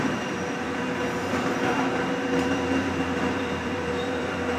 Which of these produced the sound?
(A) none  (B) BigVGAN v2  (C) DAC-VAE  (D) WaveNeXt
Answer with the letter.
B